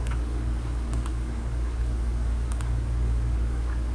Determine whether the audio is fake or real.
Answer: fake